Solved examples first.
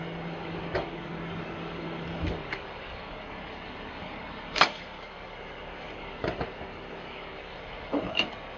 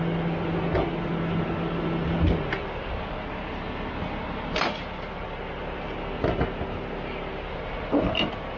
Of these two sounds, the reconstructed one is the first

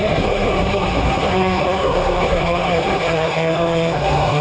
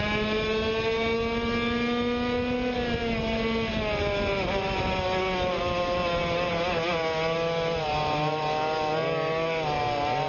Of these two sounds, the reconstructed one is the first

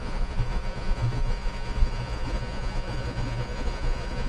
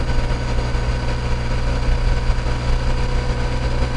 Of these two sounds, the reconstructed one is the first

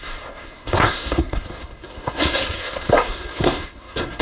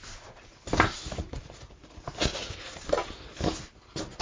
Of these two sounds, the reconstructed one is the first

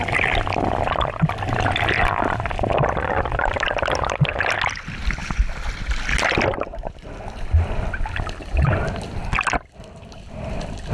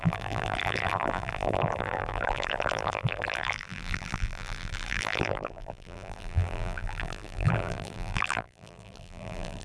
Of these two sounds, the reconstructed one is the second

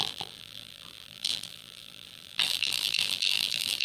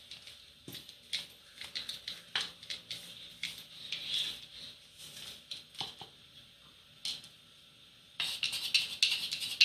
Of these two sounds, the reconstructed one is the first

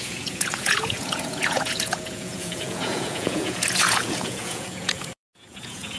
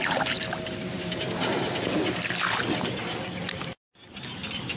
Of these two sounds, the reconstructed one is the first